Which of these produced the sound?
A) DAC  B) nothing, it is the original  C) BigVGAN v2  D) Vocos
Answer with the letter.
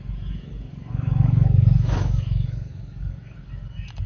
A